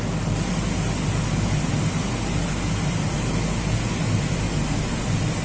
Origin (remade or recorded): recorded